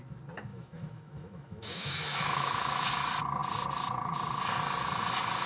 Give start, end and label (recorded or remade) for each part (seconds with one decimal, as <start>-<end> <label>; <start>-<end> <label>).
0.0-0.5 recorded; 0.5-2.9 remade; 2.9-5.5 recorded